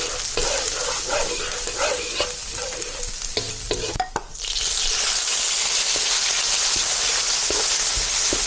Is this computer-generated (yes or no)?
no